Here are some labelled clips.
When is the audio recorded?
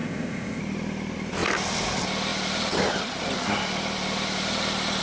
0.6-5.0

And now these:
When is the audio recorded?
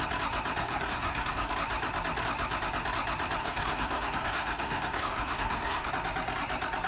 0.0-0.6; 1.5-3.4; 5.9-6.9